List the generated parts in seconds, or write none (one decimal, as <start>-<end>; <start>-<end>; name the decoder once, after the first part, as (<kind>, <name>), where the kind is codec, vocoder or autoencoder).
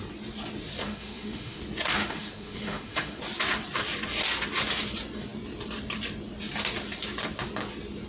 0.8-1.6 (autoencoder, DAC-VAE); 2.0-3.2